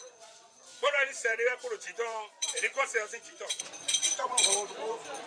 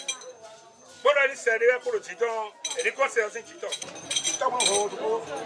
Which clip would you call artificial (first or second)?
first